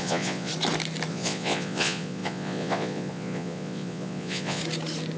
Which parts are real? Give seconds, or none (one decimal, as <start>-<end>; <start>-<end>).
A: 0.5-1.1; 4.6-5.2